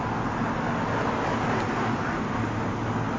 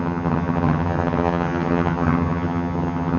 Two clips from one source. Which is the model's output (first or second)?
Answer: second